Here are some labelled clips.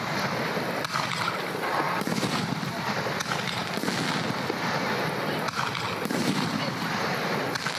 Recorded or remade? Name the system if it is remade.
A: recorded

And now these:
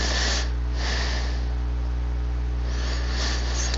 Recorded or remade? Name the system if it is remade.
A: recorded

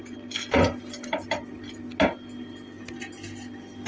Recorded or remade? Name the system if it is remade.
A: recorded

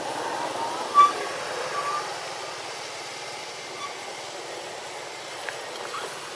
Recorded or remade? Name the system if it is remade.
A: recorded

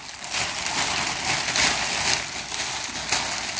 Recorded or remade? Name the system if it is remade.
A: recorded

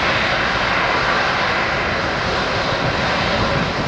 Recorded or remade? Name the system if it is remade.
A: recorded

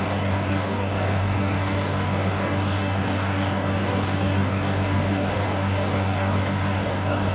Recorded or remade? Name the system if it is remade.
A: remade, codec, DAC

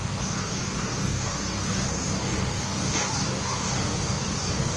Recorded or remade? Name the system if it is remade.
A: remade, codec, DAC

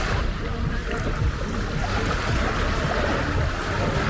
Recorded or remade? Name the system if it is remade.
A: recorded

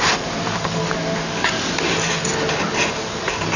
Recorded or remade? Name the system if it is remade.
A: recorded